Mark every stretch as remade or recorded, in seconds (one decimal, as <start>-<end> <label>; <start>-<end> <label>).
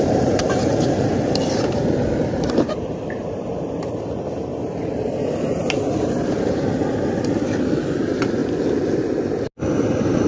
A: 0.0-4.5 remade; 4.5-5.4 recorded; 5.4-8.4 remade; 8.4-9.6 recorded; 9.6-10.3 remade